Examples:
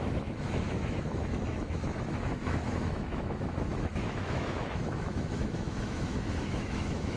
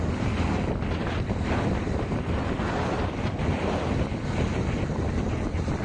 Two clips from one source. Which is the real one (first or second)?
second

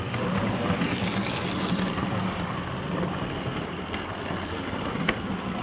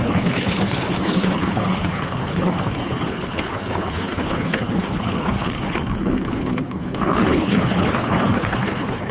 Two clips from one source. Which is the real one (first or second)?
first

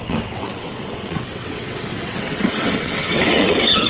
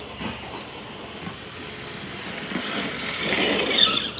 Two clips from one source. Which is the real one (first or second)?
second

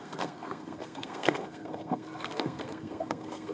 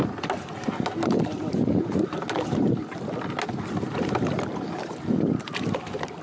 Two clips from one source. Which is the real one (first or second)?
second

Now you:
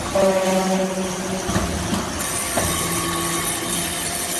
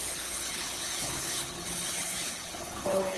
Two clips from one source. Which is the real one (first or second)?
first